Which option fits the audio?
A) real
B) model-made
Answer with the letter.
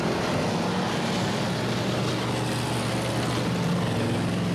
A